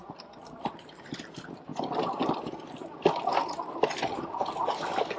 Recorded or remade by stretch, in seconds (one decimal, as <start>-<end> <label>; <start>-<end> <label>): 0.0-5.2 recorded